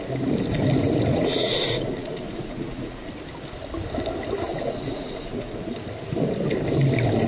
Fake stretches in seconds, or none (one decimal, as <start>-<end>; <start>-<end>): 1.1-3.1; 4.5-5.7